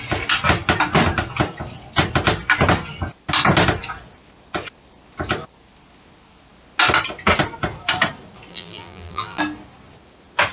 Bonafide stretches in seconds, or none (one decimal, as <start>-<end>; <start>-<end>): 0.0-8.5; 9.4-10.5